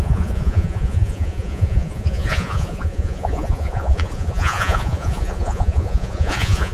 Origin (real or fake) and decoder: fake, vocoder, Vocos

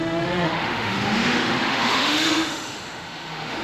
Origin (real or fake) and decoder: fake, autoencoder, DAC-VAE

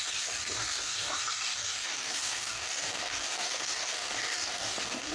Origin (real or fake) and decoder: fake, codec, DAC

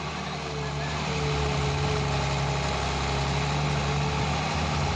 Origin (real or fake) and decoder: real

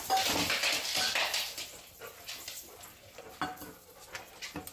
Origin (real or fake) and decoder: real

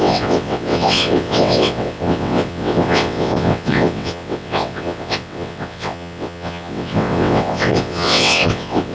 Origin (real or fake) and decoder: fake, vocoder, WaveNeXt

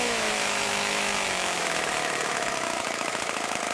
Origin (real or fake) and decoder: fake, autoencoder, DAC-VAE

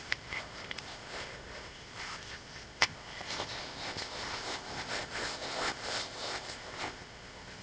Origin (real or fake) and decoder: fake, codec, ZipCodec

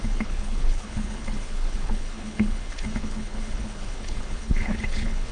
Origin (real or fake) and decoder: fake, codec, HILCodec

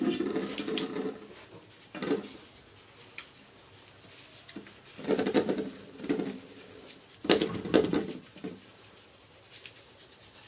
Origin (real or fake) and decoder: real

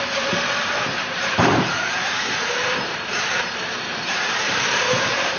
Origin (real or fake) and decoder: fake, vocoder, BigVGAN v2